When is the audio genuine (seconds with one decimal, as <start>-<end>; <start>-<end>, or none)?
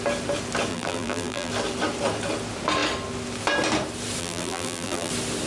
0.0-0.7; 1.5-4.2; 5.1-5.5